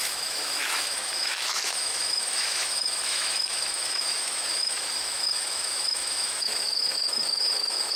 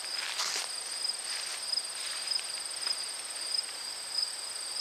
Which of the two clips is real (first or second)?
second